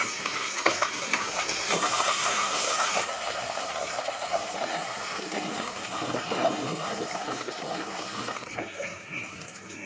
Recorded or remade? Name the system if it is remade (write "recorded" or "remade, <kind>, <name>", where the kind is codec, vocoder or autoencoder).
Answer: remade, codec, SNAC